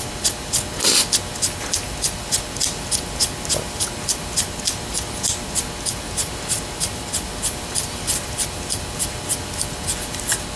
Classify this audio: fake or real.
real